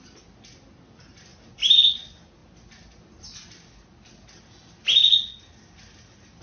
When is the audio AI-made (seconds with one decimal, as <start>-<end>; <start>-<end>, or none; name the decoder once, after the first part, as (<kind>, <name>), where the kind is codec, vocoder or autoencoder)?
none